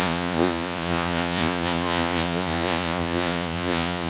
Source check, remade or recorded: remade